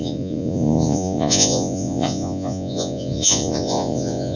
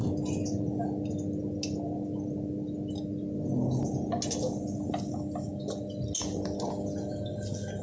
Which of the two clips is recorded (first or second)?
second